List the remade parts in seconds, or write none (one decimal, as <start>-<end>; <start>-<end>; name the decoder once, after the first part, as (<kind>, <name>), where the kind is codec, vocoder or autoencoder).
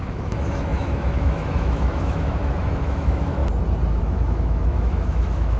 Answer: 0.0-3.4 (autoencoder, DAC-VAE); 4.0-5.6